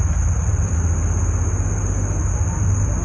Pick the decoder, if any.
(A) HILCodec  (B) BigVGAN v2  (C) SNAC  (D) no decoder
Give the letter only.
D